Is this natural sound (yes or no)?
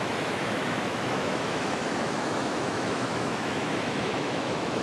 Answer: no